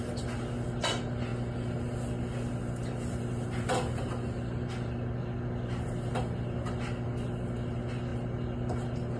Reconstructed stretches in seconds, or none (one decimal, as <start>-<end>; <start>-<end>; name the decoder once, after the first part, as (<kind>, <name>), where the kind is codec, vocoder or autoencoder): none